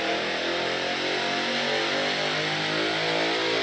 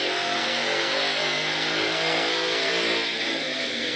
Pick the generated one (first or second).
second